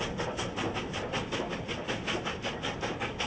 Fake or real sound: real